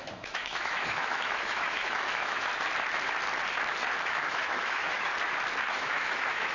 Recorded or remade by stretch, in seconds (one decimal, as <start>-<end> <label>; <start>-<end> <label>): 0.0-2.5 remade; 2.5-4.0 recorded; 4.0-5.1 remade; 5.1-5.7 recorded; 5.7-6.5 remade